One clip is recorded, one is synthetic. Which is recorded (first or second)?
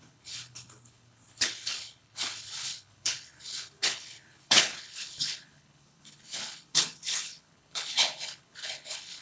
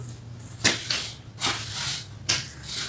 second